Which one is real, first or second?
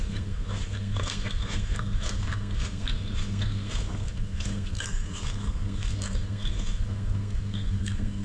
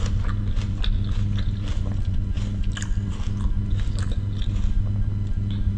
second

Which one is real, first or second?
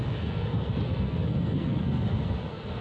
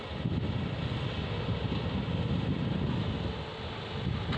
second